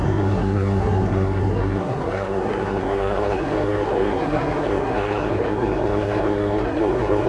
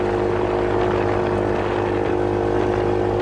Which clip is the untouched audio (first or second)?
second